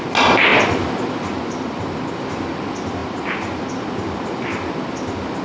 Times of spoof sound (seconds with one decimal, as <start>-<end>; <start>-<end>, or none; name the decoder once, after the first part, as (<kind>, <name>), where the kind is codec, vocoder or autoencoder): none